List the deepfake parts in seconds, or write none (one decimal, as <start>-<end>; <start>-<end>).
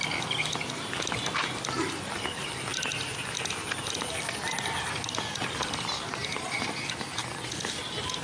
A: none